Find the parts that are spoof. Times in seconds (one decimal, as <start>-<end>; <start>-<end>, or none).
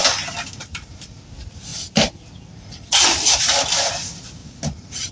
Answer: none